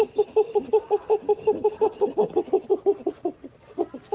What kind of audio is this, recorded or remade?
recorded